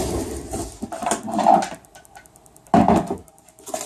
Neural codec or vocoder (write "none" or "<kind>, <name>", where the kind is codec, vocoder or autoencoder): none